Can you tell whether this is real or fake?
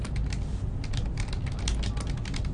real